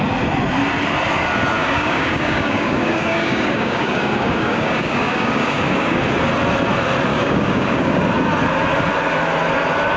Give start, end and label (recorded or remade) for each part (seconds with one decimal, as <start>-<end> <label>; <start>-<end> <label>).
0.0-1.6 recorded; 1.6-6.0 remade; 6.0-7.1 recorded; 7.1-8.0 remade; 8.0-10.0 recorded